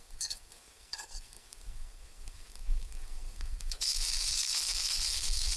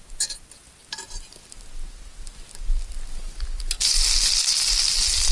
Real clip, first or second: second